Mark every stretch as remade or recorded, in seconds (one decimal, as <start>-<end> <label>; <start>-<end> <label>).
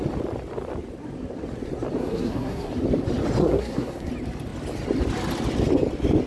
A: 0.0-2.0 recorded; 2.0-2.7 remade; 2.7-3.4 recorded; 3.4-4.1 remade; 4.1-6.3 recorded